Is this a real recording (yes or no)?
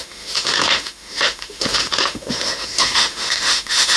no